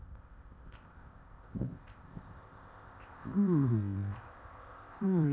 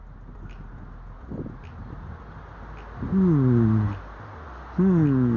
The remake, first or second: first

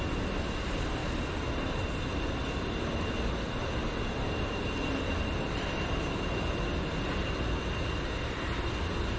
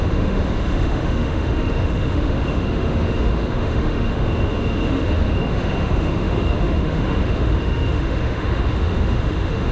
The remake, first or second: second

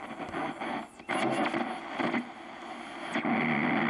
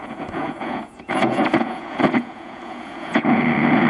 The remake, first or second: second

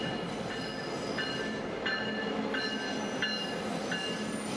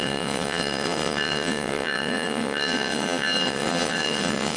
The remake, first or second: second